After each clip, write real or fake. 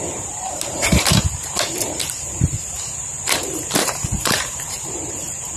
fake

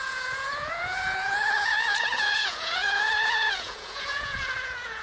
fake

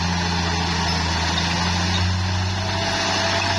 real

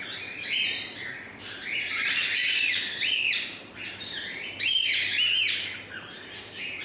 fake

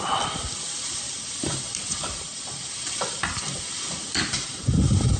real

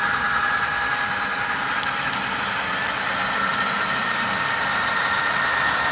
real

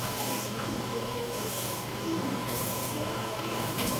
fake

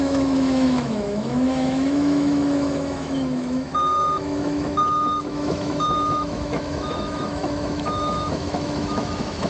fake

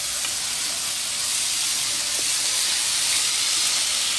real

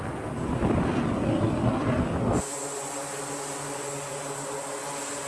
real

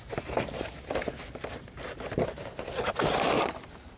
real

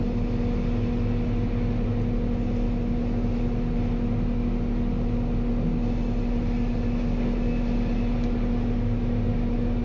real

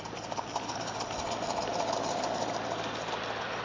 real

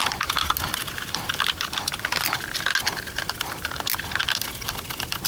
real